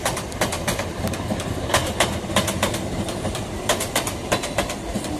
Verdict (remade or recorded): recorded